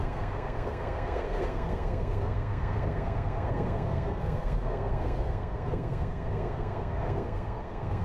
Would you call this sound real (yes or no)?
no